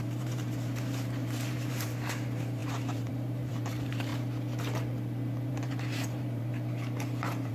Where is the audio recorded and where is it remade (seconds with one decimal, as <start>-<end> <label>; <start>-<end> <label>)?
0.0-4.1 remade; 4.1-5.5 recorded; 5.5-6.5 remade; 6.5-7.5 recorded